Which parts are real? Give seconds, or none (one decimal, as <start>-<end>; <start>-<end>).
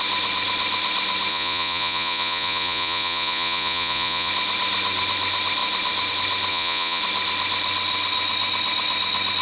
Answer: 0.0-1.3; 4.3-6.5; 7.0-9.4